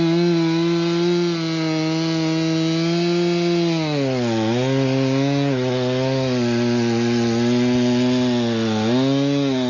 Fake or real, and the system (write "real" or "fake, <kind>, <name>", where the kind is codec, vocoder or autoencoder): real